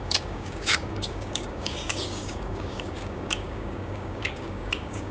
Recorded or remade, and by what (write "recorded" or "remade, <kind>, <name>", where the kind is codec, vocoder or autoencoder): remade, codec, DAC